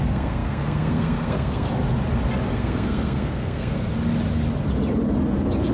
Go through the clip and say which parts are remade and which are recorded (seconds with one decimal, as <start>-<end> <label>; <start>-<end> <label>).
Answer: 0.0-1.7 remade; 1.7-2.5 recorded; 2.5-3.9 remade; 3.9-5.7 recorded